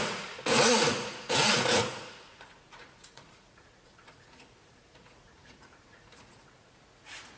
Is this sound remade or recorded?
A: remade